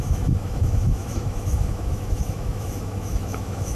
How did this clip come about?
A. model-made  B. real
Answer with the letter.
A